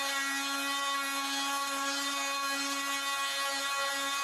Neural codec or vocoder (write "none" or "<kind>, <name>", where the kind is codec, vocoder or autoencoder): none